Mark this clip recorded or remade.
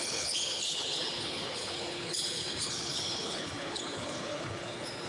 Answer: remade